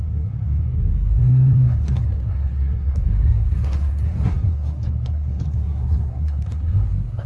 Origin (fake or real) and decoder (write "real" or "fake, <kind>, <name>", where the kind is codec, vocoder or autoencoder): fake, codec, SNAC